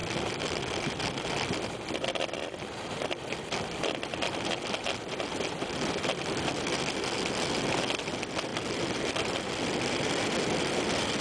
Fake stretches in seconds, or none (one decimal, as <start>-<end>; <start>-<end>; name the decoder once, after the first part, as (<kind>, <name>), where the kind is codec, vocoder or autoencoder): none